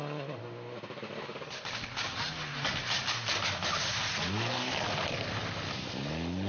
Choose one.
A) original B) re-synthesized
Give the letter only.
A